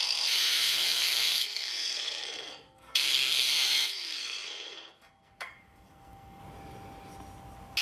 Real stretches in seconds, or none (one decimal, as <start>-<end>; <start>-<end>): 6.4-7.8